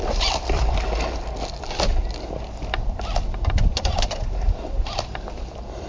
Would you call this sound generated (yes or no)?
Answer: no